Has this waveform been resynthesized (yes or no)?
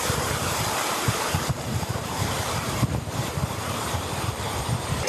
yes